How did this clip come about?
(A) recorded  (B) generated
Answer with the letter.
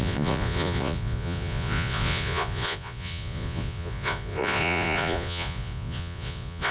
B